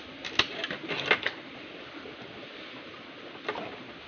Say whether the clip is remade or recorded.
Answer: recorded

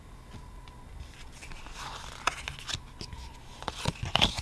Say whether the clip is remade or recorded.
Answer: recorded